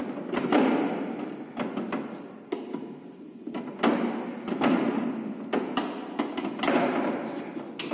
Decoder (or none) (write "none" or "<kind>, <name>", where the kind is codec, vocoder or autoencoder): none